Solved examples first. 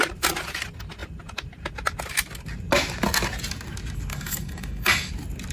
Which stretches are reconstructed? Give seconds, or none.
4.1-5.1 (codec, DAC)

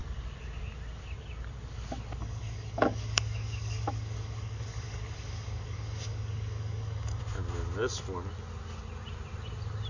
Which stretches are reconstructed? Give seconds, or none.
2.2-7.2 (codec, DAC)